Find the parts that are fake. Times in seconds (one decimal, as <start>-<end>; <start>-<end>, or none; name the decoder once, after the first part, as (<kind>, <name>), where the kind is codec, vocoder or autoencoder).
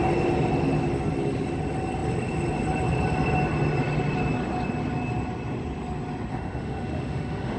6.3-7.6 (autoencoder, DAC-VAE)